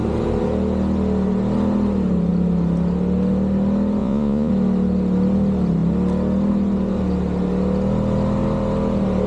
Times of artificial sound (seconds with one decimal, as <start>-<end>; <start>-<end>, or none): 4.0-4.5